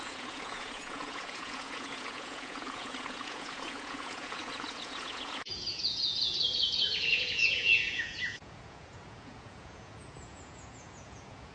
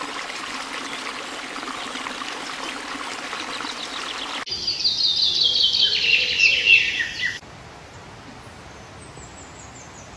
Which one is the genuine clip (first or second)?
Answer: second